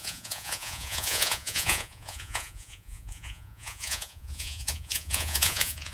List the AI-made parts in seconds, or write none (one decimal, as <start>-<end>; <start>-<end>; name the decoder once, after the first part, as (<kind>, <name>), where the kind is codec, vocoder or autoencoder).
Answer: 0.0-5.9 (vocoder, Vocos)